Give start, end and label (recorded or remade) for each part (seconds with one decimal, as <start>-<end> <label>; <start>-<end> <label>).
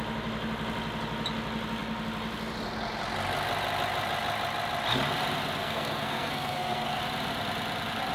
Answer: 0.0-5.6 recorded; 5.6-7.0 remade; 7.0-8.1 recorded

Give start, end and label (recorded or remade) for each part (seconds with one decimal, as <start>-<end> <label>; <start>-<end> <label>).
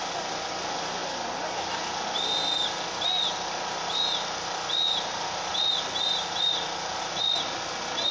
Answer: 0.0-8.1 recorded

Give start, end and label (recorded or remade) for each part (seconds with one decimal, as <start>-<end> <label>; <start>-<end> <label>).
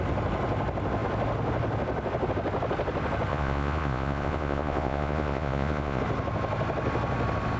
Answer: 0.0-3.3 recorded; 3.3-6.0 remade; 6.0-7.6 recorded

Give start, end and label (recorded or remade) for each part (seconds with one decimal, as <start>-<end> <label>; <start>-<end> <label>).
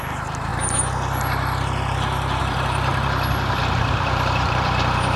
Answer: 0.0-0.5 remade; 0.5-2.4 recorded; 2.4-2.9 remade; 2.9-3.8 recorded; 3.8-5.2 remade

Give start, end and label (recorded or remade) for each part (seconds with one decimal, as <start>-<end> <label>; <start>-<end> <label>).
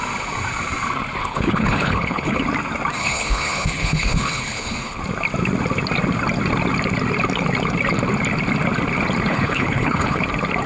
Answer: 0.0-1.2 recorded; 1.2-2.4 remade; 2.4-3.0 recorded; 3.0-5.0 remade; 5.0-9.3 recorded; 9.3-10.2 remade; 10.2-10.7 recorded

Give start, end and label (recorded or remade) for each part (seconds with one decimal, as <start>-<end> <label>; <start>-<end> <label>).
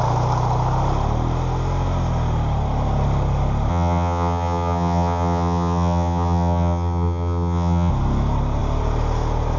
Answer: 0.0-3.7 recorded; 3.7-7.9 remade; 7.9-9.6 recorded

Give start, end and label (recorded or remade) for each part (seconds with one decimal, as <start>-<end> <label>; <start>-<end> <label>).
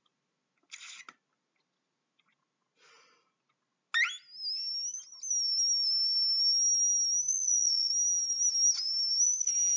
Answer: 0.0-7.3 recorded; 7.3-7.9 remade; 7.9-9.8 recorded